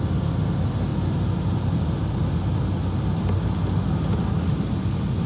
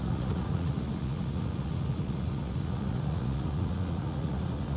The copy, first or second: second